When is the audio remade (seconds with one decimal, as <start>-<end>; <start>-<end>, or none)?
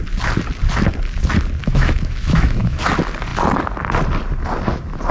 1.6-2.8